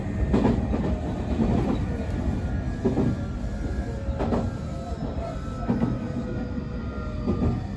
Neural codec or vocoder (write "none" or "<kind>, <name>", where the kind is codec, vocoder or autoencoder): none